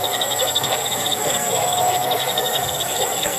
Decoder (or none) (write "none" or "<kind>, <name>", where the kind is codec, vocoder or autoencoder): codec, SNAC